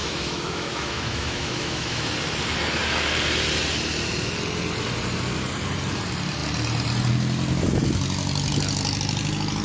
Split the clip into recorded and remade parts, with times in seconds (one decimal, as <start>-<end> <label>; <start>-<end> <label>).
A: 0.0-2.1 remade; 2.1-9.6 recorded

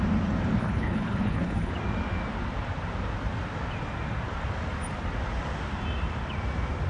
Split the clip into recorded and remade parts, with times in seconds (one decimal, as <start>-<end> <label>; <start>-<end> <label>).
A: 0.0-0.6 recorded; 0.6-1.7 remade; 1.7-6.9 recorded

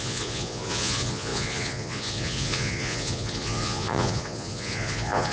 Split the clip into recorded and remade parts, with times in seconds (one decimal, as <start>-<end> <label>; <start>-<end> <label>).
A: 0.0-5.3 remade